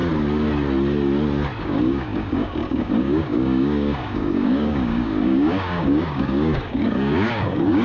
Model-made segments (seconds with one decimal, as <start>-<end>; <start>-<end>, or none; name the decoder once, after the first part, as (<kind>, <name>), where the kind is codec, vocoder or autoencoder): 1.6-7.8 (codec, DAC)

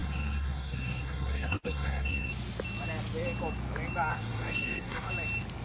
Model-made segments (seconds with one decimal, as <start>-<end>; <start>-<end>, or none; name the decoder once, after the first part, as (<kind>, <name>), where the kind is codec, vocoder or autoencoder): 0.0-2.3 (codec, SNAC); 4.1-5.1

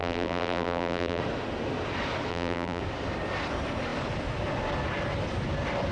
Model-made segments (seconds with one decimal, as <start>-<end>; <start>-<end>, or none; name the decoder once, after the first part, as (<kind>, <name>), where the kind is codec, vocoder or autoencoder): 0.0-1.2 (vocoder, BigVGAN v2); 2.3-2.8